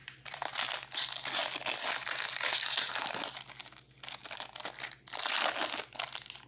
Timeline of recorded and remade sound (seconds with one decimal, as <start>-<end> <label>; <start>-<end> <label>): 0.0-0.6 remade; 0.6-6.5 recorded